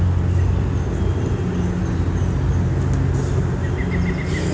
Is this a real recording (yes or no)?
yes